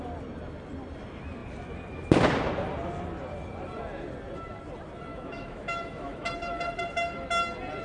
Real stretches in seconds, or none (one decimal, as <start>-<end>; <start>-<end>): 0.0-5.1; 6.3-7.8